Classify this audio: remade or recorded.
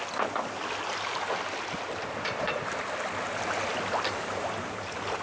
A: recorded